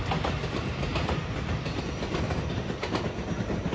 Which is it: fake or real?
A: real